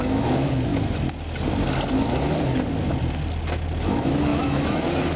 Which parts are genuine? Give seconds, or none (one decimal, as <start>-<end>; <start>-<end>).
0.7-3.8